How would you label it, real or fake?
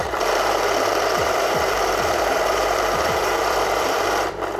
fake